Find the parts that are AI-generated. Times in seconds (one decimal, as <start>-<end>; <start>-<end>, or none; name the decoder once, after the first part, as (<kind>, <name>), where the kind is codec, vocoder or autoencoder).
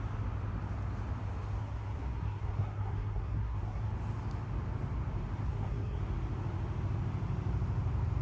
1.6-3.9 (codec, SNAC); 5.4-6.0